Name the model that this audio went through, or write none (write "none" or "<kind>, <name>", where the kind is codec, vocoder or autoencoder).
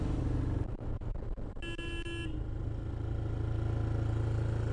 none